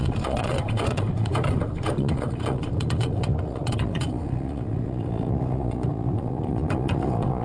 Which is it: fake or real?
fake